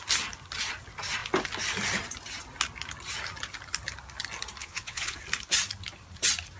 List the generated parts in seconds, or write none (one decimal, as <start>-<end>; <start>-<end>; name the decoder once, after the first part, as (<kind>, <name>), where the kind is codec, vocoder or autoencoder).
4.6-5.2 (vocoder, Vocos)